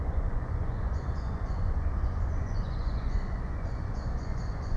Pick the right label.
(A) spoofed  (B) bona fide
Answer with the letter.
A